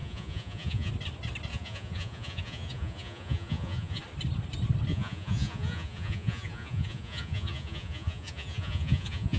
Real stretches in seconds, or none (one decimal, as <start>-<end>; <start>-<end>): 0.9-1.5; 4.0-4.9